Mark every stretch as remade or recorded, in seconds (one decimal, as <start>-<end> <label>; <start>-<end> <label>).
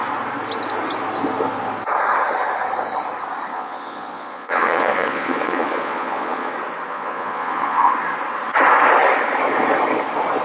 0.0-3.5 recorded; 3.5-6.5 remade; 6.5-6.9 recorded; 6.9-7.9 remade; 7.9-10.4 recorded